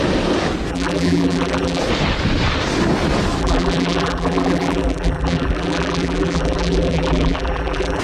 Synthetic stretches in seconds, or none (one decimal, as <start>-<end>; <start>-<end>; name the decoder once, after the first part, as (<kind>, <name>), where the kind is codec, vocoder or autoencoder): 0.7-1.8 (vocoder, BigVGAN v2); 3.4-8.0